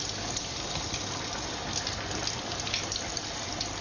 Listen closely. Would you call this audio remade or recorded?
recorded